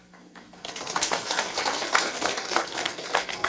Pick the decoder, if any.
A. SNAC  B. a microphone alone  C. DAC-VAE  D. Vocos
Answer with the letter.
A